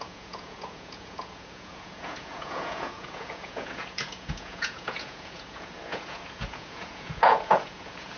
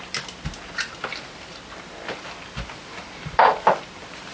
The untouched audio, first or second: second